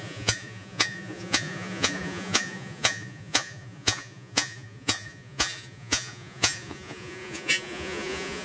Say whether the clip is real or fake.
fake